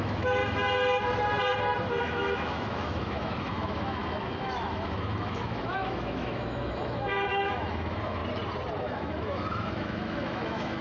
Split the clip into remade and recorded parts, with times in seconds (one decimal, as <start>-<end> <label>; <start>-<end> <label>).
0.0-0.4 remade; 0.4-2.0 recorded; 2.0-8.2 remade; 8.2-8.8 recorded; 8.8-10.8 remade